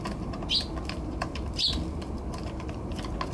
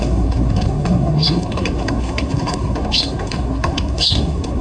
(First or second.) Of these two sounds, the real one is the first